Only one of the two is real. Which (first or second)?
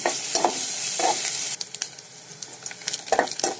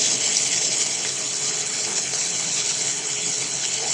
first